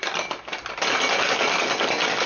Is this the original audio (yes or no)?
yes